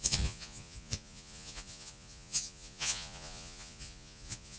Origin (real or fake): fake